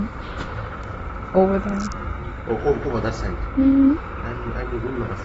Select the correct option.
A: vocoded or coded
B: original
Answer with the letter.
B